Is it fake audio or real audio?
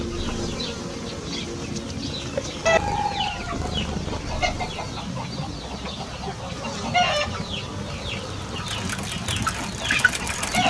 real